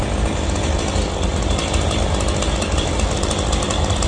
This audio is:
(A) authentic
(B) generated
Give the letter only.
A